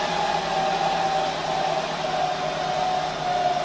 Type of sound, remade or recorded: recorded